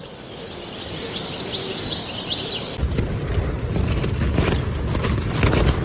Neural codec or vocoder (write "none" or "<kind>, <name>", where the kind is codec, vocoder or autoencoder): none